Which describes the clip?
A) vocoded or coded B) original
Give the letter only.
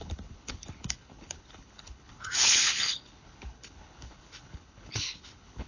A